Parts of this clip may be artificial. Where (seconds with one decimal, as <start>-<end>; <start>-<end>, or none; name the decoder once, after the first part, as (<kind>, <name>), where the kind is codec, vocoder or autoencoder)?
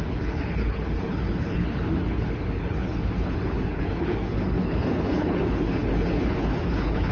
0.0-7.1 (codec, HILCodec)